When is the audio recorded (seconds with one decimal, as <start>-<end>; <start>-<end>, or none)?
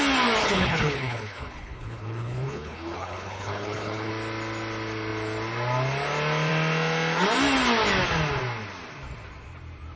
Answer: 0.0-0.4; 4.1-10.0